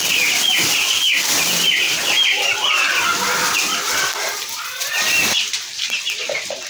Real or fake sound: fake